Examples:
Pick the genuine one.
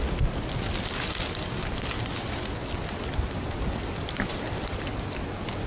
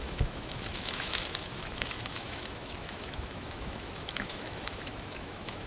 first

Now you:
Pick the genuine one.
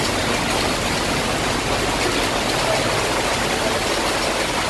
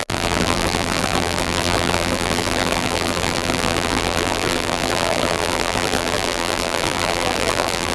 first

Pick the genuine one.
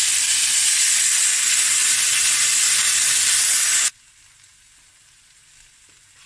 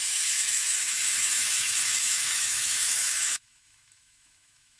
first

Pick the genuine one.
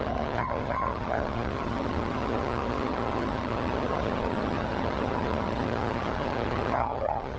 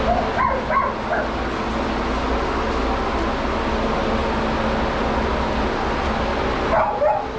second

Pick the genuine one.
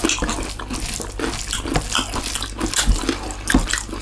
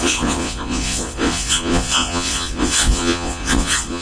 first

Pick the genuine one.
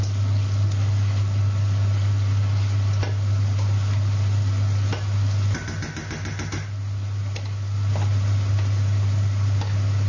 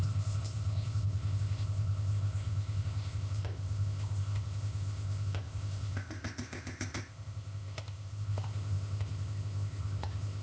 first